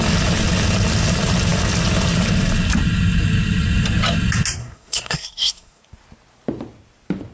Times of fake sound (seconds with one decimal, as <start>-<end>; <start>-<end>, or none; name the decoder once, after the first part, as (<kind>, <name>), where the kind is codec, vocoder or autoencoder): 4.6-5.8 (codec, SNAC)